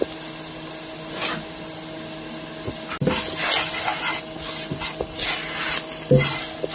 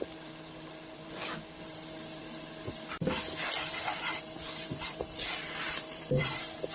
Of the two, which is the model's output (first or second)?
second